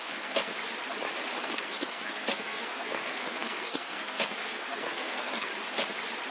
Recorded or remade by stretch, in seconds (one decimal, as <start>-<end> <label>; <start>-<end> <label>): 0.0-0.5 remade; 0.5-1.4 recorded; 1.4-5.5 remade; 5.5-6.3 recorded